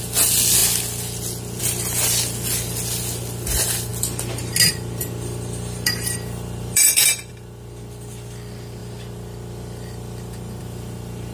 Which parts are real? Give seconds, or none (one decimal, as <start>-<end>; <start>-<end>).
0.0-3.9; 7.3-8.8; 10.6-11.3